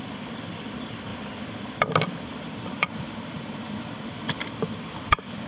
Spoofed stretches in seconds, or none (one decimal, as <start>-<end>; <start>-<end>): 0.0-5.5